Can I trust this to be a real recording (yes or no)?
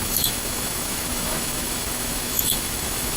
no